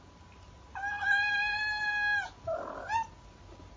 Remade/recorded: recorded